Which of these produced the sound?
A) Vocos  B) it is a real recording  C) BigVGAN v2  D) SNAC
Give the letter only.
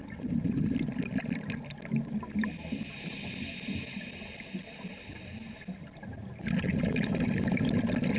B